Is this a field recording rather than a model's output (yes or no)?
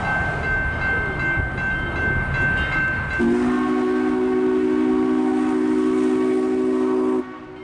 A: yes